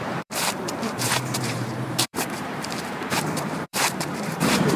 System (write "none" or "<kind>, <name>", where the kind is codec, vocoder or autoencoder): vocoder, BigVGAN v2